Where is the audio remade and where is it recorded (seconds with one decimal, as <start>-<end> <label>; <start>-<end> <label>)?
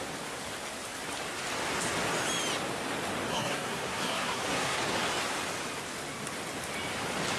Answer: 0.0-3.3 recorded; 3.3-4.8 remade; 4.8-7.4 recorded